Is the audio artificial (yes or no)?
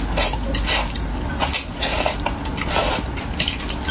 no